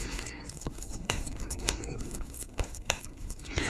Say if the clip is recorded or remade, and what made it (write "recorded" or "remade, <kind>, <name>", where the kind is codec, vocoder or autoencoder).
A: remade, codec, SNAC